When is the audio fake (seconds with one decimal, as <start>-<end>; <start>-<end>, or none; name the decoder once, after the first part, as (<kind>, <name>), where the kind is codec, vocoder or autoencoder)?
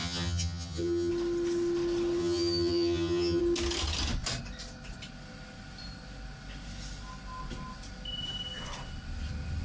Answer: 0.0-1.1 (vocoder, HiFi-GAN); 2.2-3.4